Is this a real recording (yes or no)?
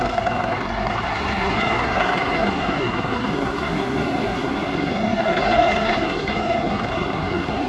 no